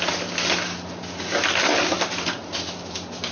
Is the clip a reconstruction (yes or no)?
no